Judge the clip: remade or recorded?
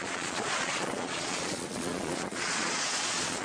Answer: remade